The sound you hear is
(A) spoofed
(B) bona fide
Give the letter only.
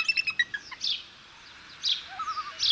B